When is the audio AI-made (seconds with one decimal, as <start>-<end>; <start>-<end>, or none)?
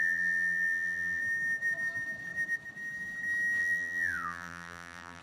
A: 0.0-1.2; 3.6-5.2